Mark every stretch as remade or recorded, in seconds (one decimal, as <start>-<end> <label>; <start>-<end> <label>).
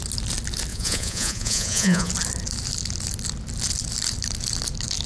0.0-0.7 recorded; 0.7-2.1 remade; 2.1-5.1 recorded